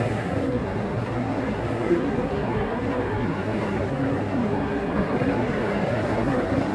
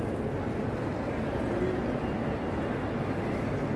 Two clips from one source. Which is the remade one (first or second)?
first